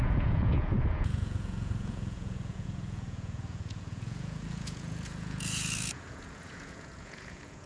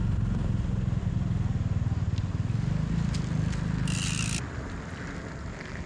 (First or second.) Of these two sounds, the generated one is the first